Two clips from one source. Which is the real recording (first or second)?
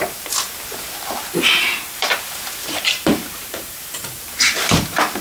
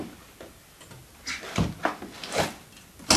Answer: second